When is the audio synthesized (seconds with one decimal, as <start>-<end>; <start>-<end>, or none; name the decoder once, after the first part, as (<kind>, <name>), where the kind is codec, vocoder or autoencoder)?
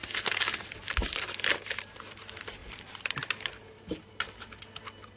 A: 2.6-4.1 (vocoder, BigVGAN v2)